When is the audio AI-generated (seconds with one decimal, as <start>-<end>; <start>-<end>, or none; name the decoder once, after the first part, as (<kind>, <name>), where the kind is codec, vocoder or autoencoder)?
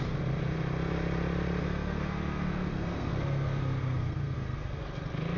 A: 1.6-4.8 (codec, SNAC)